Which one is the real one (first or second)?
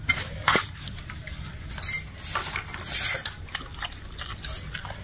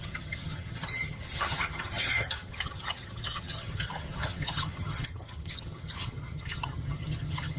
first